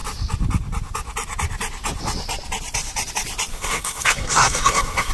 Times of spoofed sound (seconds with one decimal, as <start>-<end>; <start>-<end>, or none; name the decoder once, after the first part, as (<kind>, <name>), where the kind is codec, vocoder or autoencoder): 3.5-5.1 (codec, SNAC)